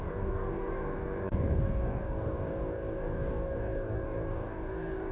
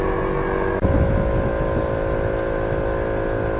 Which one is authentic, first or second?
second